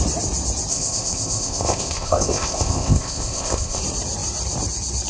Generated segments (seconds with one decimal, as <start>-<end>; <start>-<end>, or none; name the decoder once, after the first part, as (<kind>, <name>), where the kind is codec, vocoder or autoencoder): 0.7-3.8 (codec, ZipCodec)